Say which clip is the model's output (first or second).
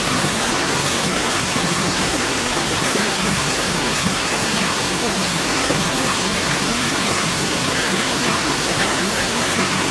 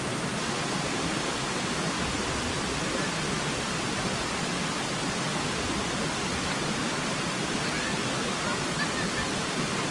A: first